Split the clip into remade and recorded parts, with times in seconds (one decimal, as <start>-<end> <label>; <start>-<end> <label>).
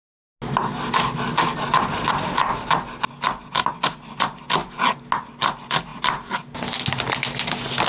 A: 0.0-7.9 recorded